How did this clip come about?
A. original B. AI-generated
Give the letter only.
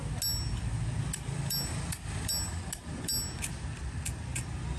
A